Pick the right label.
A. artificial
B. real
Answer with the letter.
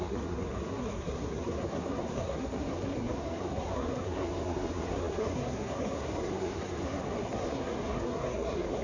A